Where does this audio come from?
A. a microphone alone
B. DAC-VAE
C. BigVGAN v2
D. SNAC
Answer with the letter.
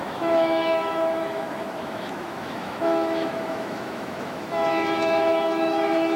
B